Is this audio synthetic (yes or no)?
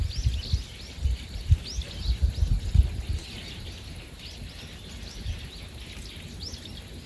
no